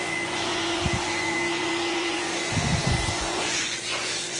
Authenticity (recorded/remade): remade